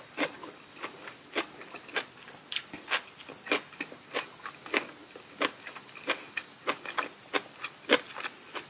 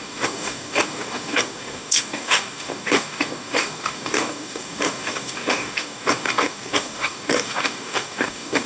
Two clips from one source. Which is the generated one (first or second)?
second